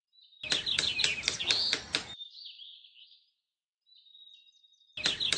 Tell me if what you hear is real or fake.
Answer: real